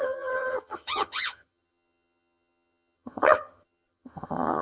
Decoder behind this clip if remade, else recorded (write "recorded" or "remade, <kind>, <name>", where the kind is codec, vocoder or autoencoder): remade, vocoder, HiFi-GAN